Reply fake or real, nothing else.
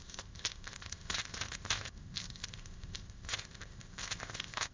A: fake